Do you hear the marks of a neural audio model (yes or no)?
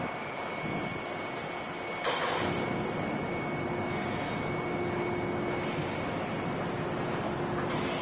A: no